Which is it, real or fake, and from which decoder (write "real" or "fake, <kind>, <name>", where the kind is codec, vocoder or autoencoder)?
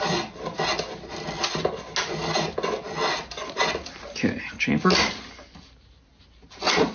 real